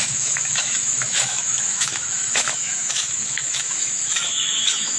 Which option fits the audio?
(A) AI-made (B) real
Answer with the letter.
A